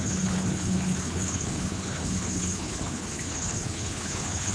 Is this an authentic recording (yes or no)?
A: no